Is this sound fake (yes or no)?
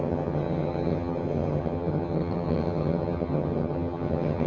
yes